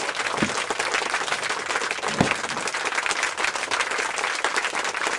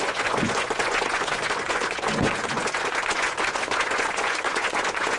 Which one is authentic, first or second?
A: first